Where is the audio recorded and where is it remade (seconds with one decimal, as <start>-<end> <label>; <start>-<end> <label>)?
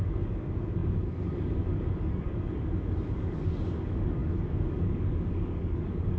0.0-6.2 remade